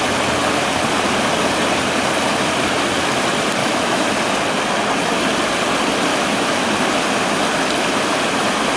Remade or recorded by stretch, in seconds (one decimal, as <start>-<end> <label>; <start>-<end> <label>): 0.0-3.6 recorded; 3.6-4.1 remade; 4.1-6.1 recorded; 6.1-6.7 remade; 6.7-8.8 recorded